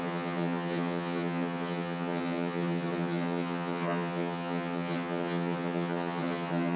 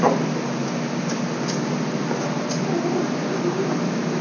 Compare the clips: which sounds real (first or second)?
second